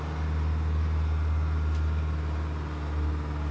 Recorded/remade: recorded